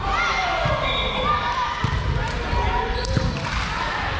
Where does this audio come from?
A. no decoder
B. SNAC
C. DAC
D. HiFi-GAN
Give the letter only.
A